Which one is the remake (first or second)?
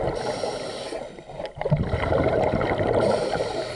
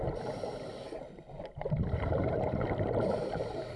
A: second